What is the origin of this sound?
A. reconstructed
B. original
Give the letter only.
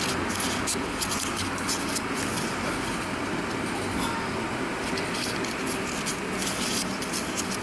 B